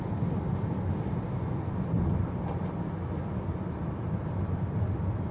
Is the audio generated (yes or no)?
no